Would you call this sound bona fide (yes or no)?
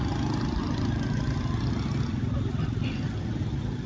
yes